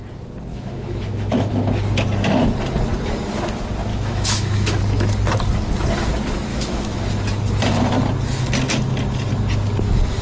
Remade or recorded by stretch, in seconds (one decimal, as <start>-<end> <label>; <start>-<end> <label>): 0.0-0.5 recorded; 0.5-1.5 remade; 1.5-3.9 recorded; 3.9-4.8 remade; 4.8-6.5 recorded; 6.5-7.0 remade; 7.0-10.2 recorded